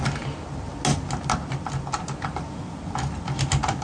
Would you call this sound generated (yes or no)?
no